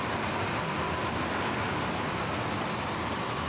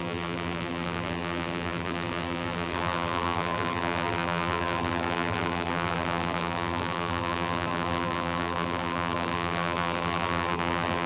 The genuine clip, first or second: first